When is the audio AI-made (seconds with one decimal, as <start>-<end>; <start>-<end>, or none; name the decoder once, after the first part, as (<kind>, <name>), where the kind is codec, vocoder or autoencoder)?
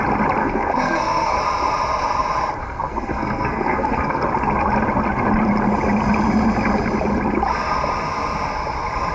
0.4-1.4 (codec, SNAC); 2.6-4.2